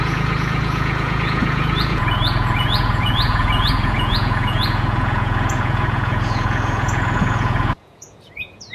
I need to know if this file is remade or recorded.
remade